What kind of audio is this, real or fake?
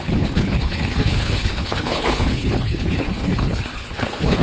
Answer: fake